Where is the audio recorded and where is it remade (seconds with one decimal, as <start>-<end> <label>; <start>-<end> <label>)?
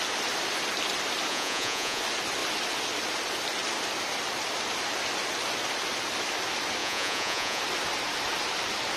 0.0-1.3 recorded; 1.3-2.0 remade; 2.0-6.8 recorded; 6.8-7.6 remade; 7.6-9.0 recorded